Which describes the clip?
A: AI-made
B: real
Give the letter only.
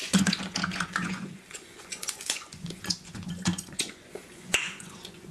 A